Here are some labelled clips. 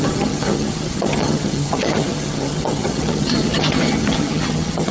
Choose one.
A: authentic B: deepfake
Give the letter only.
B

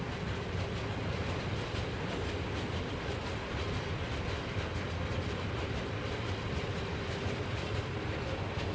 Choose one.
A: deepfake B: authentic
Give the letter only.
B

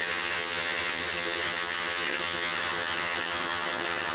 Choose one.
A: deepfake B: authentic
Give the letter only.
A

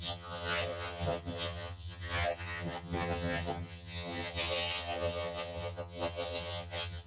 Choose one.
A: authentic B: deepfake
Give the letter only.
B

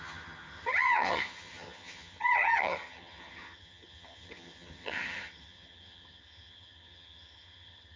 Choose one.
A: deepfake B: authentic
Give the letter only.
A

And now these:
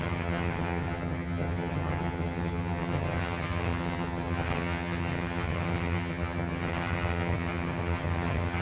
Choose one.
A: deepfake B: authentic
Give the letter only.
A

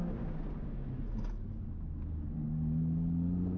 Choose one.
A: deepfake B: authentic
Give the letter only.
B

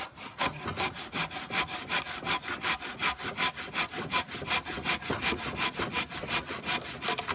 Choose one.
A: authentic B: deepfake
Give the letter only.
A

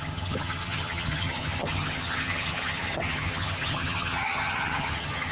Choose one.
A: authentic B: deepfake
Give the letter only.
B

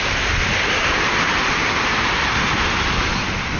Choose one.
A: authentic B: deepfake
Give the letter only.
A